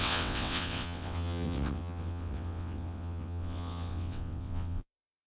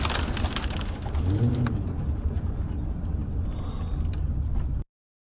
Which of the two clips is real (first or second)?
second